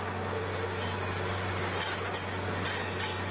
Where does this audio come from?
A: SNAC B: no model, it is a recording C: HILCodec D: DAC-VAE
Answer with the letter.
B